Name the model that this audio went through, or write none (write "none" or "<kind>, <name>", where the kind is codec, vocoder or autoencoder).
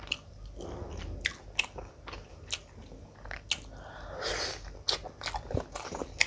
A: none